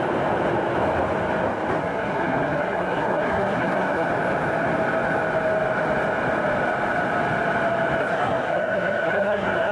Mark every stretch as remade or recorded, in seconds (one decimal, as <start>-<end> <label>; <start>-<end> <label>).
0.0-1.8 recorded; 1.8-4.1 remade; 4.1-8.0 recorded; 8.0-9.7 remade

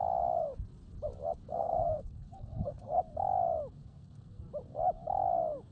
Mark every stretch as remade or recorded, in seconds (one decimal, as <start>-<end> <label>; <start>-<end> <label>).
0.0-1.5 recorded; 1.5-3.0 remade; 3.0-3.8 recorded; 3.8-4.4 remade; 4.4-5.7 recorded